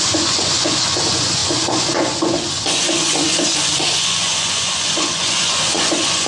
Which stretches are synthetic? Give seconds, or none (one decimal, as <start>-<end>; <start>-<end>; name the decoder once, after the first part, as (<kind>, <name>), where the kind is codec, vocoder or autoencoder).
0.0-6.3 (vocoder, Vocos)